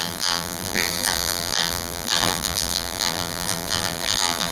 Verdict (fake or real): fake